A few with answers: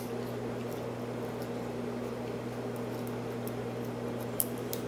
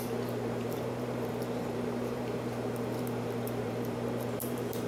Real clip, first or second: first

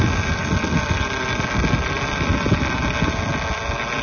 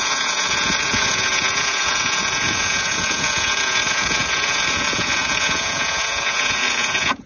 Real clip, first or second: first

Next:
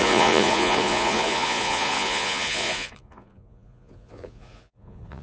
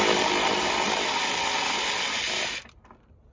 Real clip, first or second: second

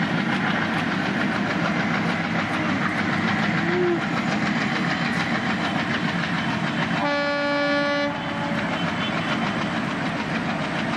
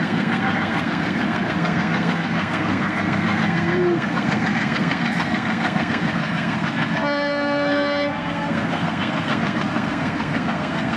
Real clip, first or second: first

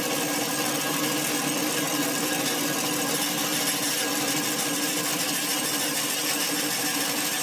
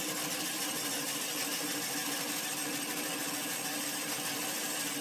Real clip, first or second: first